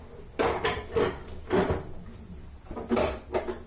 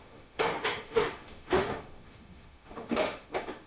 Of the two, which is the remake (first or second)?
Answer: second